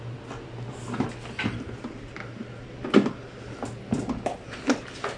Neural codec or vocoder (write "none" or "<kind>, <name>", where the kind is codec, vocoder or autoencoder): none